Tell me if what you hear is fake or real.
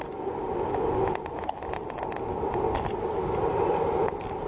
real